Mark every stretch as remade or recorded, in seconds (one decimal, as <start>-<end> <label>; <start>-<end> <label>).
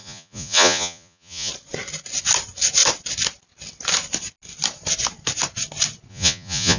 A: 0.0-1.5 remade; 1.5-6.1 recorded; 6.1-6.8 remade